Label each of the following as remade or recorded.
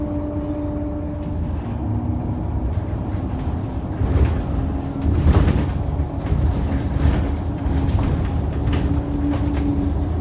recorded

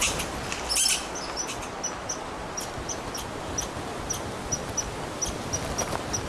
recorded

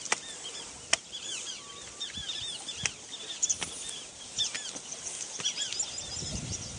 recorded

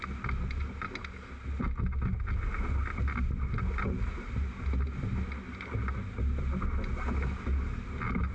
recorded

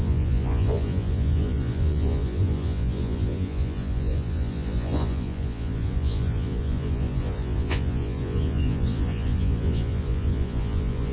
remade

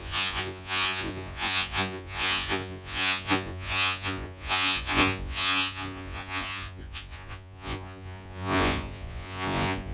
remade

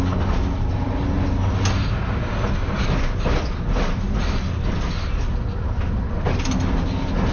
recorded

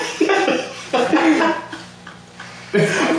recorded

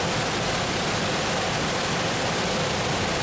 recorded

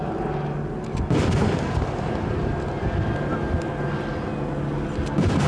recorded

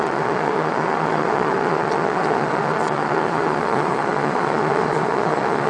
remade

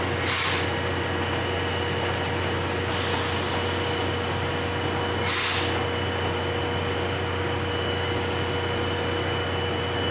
recorded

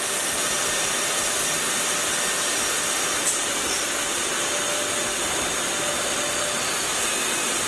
recorded